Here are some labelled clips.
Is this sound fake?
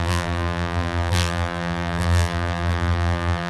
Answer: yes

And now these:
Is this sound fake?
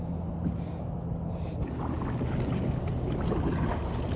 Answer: no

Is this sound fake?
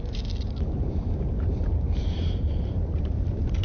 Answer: yes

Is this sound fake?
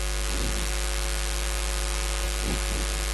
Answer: no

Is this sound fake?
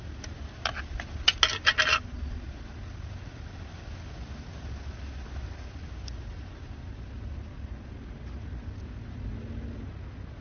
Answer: no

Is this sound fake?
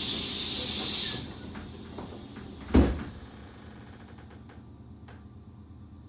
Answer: no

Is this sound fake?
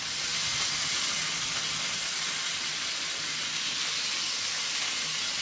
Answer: no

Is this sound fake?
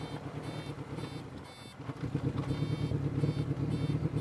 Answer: no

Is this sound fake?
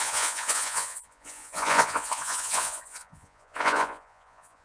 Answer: yes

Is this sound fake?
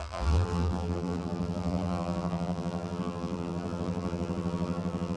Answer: yes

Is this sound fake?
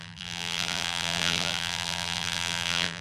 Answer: yes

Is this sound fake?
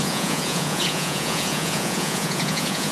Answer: yes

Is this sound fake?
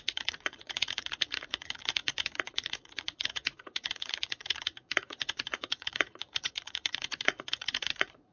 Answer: yes